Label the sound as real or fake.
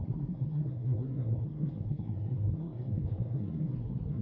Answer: fake